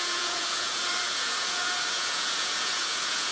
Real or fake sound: fake